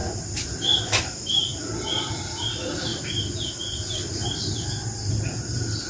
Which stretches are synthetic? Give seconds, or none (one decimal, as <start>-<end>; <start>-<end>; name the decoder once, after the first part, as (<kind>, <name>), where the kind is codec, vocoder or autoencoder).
1.0-1.5 (vocoder, BigVGAN v2); 2.1-2.9; 5.1-5.9